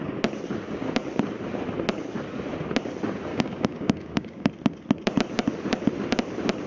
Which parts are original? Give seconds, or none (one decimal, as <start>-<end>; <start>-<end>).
0.0-3.3; 4.5-6.7